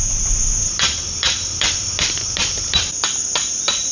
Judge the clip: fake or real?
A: real